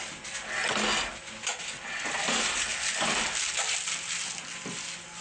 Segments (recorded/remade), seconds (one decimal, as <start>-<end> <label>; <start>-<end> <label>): 0.0-5.2 recorded